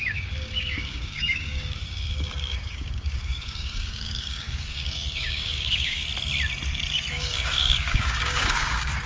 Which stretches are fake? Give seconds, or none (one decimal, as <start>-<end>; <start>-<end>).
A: 0.0-6.0; 7.1-9.1